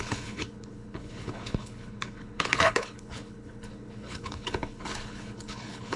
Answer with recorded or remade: remade